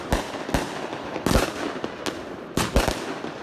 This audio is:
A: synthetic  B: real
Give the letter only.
B